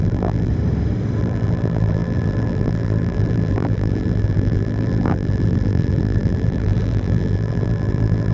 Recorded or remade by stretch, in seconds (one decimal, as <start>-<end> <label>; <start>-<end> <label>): 0.0-0.5 remade; 0.5-1.2 recorded; 1.2-8.3 remade

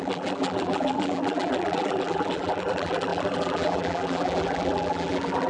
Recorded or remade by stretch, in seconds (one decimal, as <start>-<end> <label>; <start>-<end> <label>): 0.0-5.5 remade

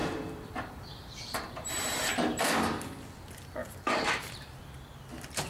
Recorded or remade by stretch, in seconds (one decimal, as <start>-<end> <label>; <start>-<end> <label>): 0.0-2.4 remade; 2.4-3.6 recorded; 3.6-4.6 remade; 4.6-5.5 recorded